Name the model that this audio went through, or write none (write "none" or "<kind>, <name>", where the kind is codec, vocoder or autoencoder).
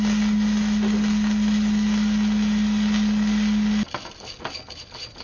none